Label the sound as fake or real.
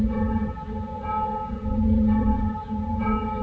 fake